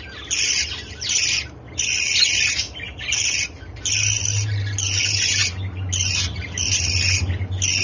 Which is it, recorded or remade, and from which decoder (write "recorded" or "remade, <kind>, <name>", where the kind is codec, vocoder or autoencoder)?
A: recorded